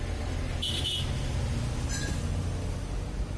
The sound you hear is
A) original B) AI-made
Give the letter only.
A